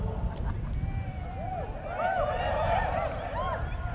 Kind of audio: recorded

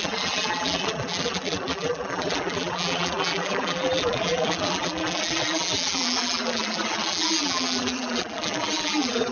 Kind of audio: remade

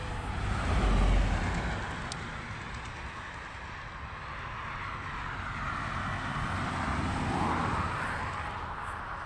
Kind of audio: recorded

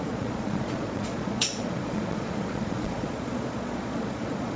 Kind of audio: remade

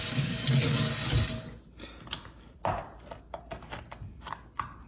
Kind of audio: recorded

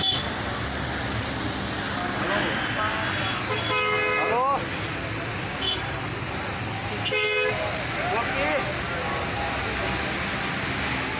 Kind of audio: recorded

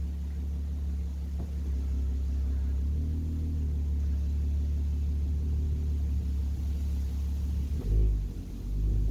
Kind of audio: recorded